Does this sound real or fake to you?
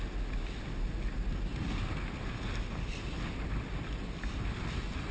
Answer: real